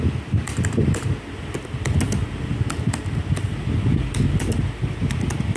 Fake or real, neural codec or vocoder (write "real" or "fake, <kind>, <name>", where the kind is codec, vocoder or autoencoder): real